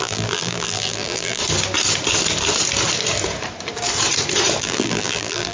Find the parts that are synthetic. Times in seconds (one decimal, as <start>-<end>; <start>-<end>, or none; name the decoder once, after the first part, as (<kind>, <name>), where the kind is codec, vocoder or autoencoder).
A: 0.0-1.4 (vocoder, BigVGAN v2); 4.6-5.5